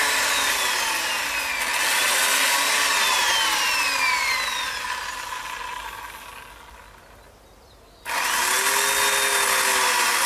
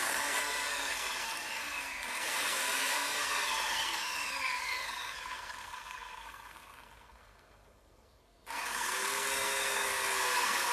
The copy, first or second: second